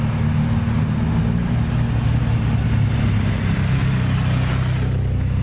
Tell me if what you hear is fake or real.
real